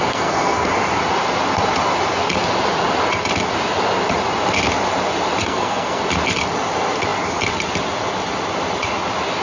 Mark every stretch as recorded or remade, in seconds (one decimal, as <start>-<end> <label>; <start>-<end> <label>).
0.0-0.7 remade; 0.7-5.4 recorded; 5.4-6.0 remade; 6.0-9.4 recorded